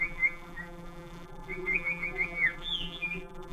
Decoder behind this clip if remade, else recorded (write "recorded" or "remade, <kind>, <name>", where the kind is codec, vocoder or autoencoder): remade, vocoder, BigVGAN v2